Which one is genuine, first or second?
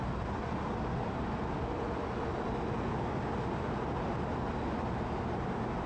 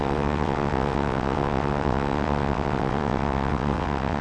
first